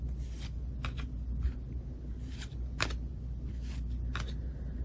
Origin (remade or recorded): recorded